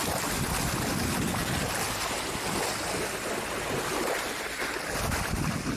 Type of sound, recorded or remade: recorded